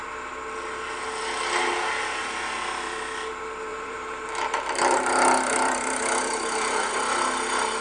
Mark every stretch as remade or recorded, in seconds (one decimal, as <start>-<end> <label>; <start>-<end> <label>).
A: 0.0-3.7 recorded; 3.7-6.9 remade; 6.9-7.8 recorded